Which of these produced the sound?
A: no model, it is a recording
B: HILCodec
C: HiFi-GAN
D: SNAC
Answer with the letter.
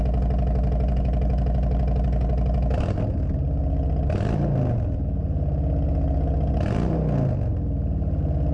A